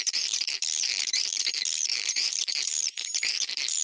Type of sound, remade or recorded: remade